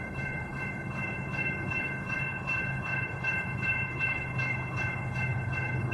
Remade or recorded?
remade